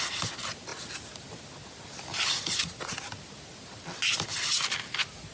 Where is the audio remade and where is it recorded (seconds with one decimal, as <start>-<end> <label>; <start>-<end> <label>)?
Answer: 0.0-5.3 recorded